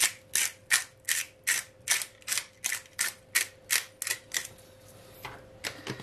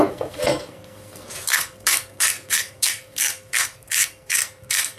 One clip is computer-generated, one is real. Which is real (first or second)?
first